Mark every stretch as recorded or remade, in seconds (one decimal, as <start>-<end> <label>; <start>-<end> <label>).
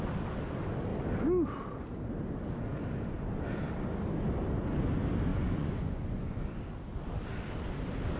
0.0-5.3 recorded; 5.3-6.4 remade; 6.4-8.2 recorded